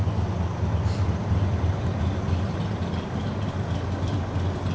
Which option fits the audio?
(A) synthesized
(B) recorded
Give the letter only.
B